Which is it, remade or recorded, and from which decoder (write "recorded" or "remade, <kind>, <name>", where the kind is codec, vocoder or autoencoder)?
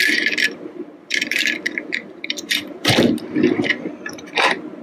remade, vocoder, BigVGAN v2